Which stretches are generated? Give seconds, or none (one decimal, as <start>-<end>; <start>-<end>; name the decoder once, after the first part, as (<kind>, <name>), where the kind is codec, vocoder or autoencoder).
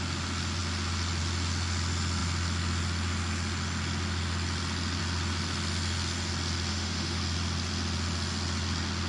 6.7-7.2 (autoencoder, DAC-VAE)